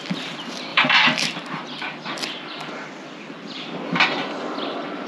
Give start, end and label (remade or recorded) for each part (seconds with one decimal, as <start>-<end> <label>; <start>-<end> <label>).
0.0-0.7 recorded; 0.7-3.8 remade; 3.8-5.1 recorded